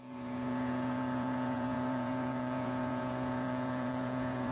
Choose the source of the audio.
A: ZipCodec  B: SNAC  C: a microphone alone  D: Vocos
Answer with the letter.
D